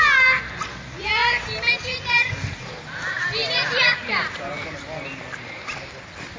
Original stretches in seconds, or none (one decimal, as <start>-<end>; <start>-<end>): 0.0-6.4